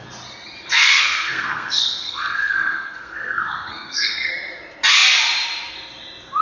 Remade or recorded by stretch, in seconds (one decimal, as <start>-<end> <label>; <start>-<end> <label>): 0.0-0.7 recorded; 0.7-4.3 remade; 4.3-6.4 recorded